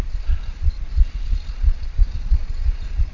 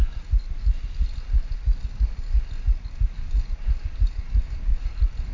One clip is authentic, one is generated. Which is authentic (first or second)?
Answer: second